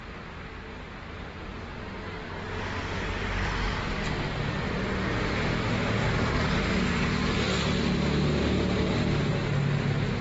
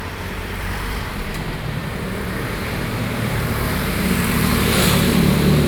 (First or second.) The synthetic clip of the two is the second